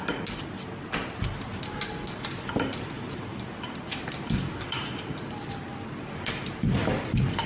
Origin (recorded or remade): recorded